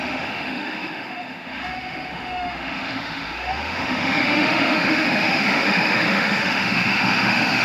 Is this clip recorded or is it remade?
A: remade